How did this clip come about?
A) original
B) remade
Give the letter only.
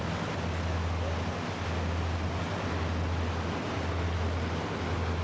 A